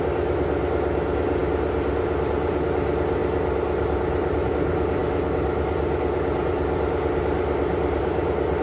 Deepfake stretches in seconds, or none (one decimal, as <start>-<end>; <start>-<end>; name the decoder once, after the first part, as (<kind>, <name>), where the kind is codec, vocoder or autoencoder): none